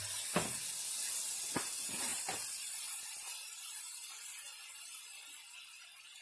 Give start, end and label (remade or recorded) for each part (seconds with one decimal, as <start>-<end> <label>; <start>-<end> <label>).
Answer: 0.0-6.2 recorded